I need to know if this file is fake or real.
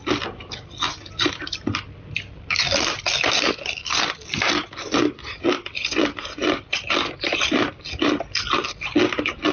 real